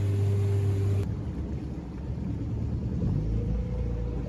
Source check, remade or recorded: recorded